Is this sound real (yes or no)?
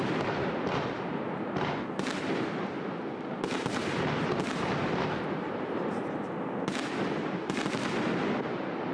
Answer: yes